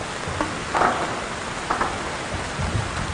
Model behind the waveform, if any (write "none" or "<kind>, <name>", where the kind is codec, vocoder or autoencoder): none